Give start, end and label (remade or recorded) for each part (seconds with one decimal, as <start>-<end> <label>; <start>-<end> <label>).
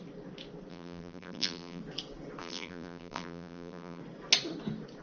0.0-0.7 recorded; 0.7-1.8 remade; 1.8-2.4 recorded; 2.4-4.0 remade; 4.0-5.0 recorded